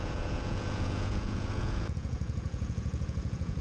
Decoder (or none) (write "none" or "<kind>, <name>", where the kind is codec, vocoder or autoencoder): vocoder, Vocos